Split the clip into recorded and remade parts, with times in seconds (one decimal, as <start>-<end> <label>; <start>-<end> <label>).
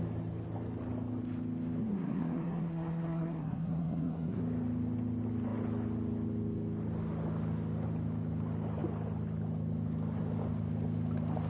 0.0-1.8 recorded; 1.8-4.4 remade; 4.4-11.5 recorded